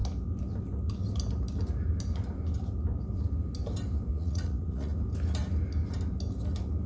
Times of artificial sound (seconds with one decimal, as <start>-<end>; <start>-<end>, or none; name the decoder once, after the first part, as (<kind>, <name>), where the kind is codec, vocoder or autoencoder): 4.1-4.9 (vocoder, Vocos)